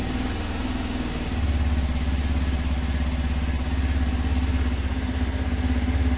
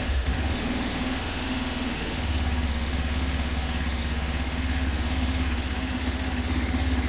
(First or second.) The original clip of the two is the first